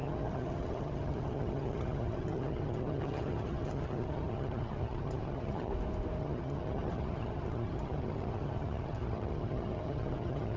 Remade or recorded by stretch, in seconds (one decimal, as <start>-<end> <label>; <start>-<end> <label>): 0.0-5.7 remade; 5.7-6.2 recorded; 6.2-10.6 remade